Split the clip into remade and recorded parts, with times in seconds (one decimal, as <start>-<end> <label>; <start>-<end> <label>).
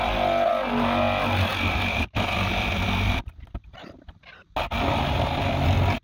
0.0-6.0 recorded